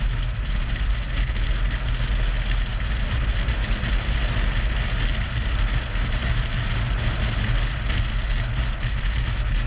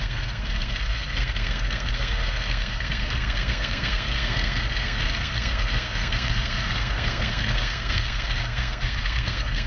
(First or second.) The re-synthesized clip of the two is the second